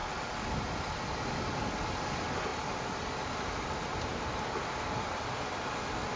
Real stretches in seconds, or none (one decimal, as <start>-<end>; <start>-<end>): 0.0-6.2